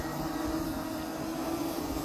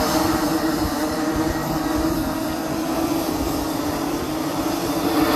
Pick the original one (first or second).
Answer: first